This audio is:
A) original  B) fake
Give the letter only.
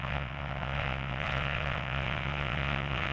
B